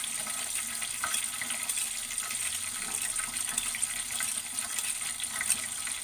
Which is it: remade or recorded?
recorded